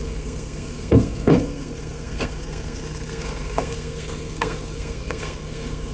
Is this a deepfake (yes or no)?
yes